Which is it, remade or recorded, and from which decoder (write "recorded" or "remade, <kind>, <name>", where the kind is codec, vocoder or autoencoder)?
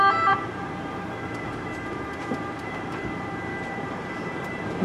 remade, vocoder, BigVGAN v2